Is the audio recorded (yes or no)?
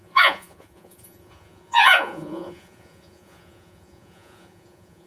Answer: no